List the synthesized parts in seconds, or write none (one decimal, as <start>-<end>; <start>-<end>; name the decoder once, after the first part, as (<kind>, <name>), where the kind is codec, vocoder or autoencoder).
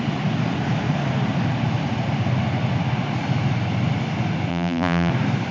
4.5-5.1 (vocoder, BigVGAN v2)